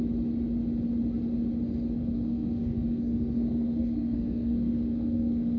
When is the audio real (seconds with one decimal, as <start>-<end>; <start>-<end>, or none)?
0.0-2.0